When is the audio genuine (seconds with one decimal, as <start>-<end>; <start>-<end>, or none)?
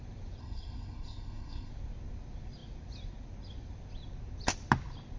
0.0-0.4; 1.7-5.2